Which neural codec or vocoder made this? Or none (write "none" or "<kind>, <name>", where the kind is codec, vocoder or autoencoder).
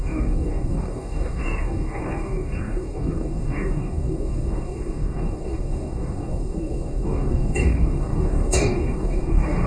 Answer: codec, DAC